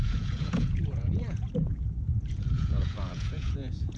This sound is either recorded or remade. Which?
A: remade